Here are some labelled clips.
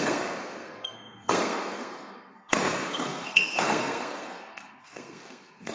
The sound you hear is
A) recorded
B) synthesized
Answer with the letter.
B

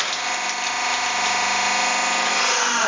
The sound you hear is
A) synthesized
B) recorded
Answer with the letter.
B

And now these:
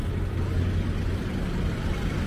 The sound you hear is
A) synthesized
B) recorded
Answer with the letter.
B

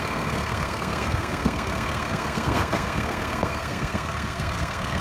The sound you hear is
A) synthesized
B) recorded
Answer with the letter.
A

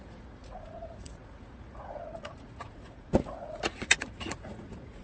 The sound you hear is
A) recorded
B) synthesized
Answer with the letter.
B